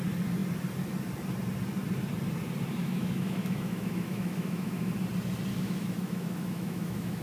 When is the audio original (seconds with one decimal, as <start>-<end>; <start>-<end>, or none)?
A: 0.0-2.8; 4.9-5.5